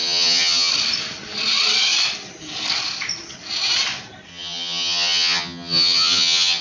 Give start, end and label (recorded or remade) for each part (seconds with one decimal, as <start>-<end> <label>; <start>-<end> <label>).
0.0-0.7 remade; 0.7-4.3 recorded; 4.3-6.6 remade